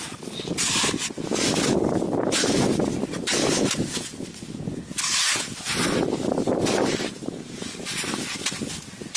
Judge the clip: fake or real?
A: real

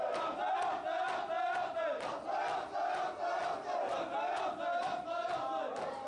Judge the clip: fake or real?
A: real